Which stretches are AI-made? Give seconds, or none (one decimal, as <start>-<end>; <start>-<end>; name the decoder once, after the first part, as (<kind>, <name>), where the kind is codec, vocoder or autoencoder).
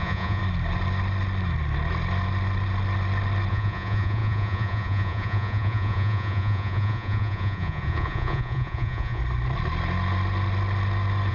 0.0-0.4 (vocoder, Vocos); 3.5-9.2